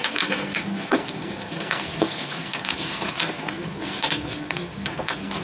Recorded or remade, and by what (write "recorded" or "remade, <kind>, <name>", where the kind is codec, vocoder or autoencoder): remade, codec, SNAC